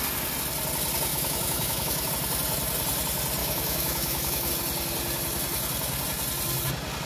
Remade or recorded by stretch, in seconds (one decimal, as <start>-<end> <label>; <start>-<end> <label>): 0.0-1.1 recorded; 1.1-2.1 remade; 2.1-3.4 recorded; 3.4-4.5 remade; 4.5-7.1 recorded